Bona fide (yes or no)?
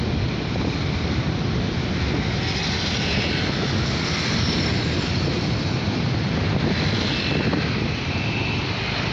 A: yes